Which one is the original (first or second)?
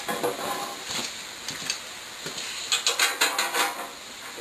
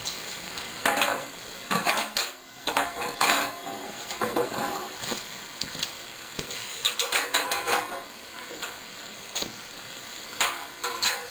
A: first